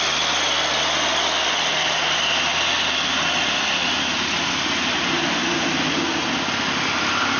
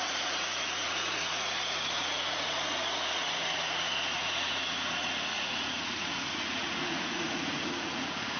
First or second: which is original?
first